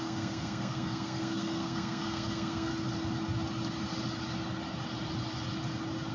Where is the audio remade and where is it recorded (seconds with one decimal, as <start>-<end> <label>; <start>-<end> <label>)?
0.0-2.7 remade; 2.7-6.1 recorded